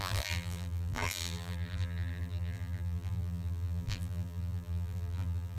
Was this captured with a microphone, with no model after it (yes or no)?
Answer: no